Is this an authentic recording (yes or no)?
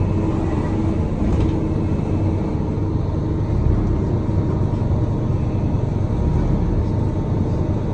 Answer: yes